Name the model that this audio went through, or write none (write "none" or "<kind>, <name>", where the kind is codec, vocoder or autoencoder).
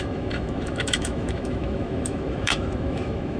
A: autoencoder, DAC-VAE